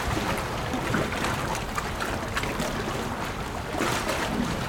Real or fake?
fake